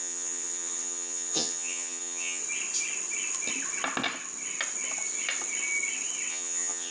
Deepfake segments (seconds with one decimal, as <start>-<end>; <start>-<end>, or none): 0.0-2.4; 6.3-6.9